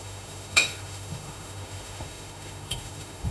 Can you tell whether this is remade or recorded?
remade